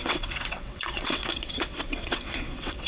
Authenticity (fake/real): fake